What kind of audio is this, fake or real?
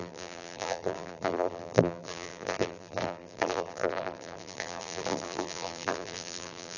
fake